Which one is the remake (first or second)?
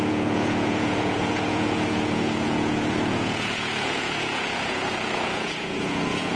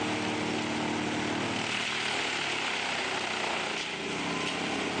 first